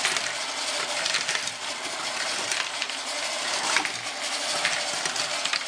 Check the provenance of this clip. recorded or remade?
recorded